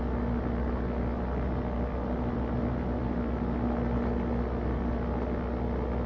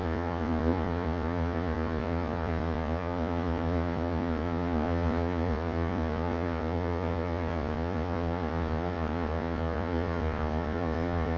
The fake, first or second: second